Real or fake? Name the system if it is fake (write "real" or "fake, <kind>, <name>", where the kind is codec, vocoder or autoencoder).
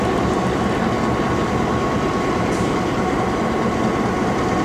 real